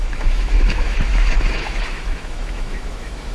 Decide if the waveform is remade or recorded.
remade